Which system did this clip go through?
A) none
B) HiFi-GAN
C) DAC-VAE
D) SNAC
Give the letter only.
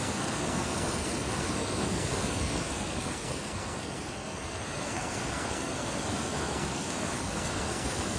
D